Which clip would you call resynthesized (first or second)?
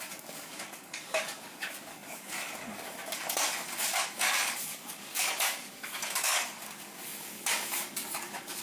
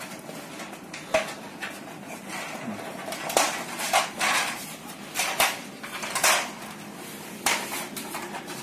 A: first